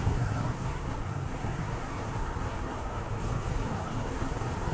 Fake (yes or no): yes